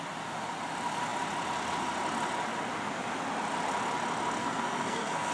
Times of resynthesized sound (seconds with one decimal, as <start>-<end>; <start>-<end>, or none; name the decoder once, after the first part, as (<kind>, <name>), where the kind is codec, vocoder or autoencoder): 4.4-5.3 (codec, SNAC)

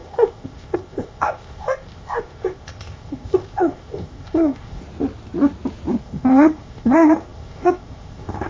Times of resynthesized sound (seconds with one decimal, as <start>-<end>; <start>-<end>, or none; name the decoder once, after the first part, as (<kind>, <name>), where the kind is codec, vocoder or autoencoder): 0.0-4.8 (codec, ZipCodec); 6.0-8.5

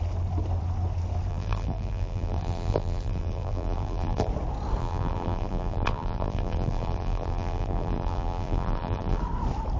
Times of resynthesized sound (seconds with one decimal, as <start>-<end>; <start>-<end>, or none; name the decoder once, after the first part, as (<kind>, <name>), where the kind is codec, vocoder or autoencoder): 1.3-4.3 (vocoder, BigVGAN v2); 4.8-9.2

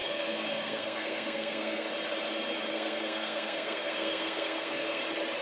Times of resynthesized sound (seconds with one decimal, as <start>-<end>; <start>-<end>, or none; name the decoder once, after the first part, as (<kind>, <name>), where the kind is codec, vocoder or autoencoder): 0.0-1.9 (codec, SNAC); 2.7-5.0

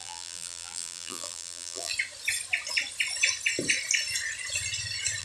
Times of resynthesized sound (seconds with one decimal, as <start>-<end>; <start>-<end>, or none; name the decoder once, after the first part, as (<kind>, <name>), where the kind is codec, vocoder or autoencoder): 0.0-1.9 (vocoder, BigVGAN v2)